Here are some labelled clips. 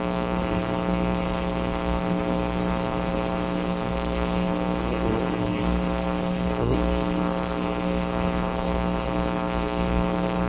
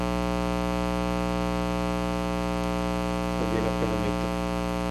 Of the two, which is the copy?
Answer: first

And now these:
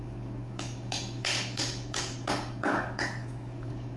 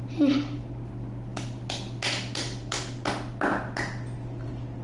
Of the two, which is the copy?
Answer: first